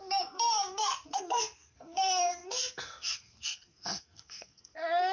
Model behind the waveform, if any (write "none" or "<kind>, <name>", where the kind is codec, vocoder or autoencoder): codec, SNAC